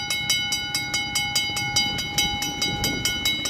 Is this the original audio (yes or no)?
yes